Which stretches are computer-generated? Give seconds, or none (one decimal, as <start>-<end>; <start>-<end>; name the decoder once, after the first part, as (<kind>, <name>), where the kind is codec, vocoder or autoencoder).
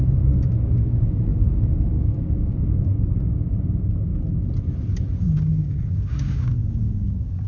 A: 0.0-4.1 (codec, DAC); 5.2-7.5